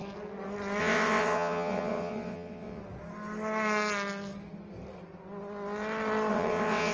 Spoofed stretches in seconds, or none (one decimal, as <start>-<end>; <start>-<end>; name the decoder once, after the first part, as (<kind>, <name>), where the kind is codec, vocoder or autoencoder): 0.8-2.8 (vocoder, WaveNeXt); 6.3-6.9